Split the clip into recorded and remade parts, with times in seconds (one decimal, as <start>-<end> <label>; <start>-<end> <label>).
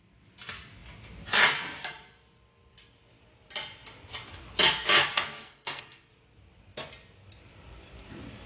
0.0-5.0 recorded; 5.0-6.1 remade; 6.1-8.5 recorded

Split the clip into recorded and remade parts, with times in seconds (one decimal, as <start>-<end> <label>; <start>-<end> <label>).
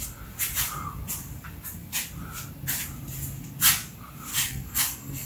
0.0-4.3 recorded; 4.3-5.3 remade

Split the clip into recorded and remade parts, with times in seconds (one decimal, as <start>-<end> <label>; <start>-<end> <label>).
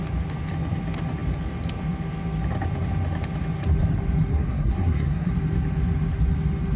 0.0-4.3 recorded; 4.3-5.3 remade; 5.3-6.8 recorded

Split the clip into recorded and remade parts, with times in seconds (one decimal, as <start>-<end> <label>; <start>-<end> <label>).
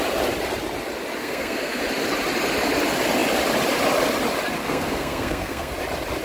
0.0-1.2 recorded; 1.2-1.8 remade; 1.8-4.6 recorded; 4.6-5.7 remade; 5.7-6.2 recorded